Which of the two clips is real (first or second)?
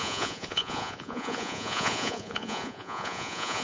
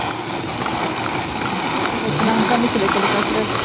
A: second